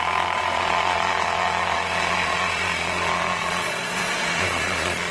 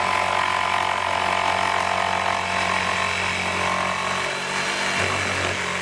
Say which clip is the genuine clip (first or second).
second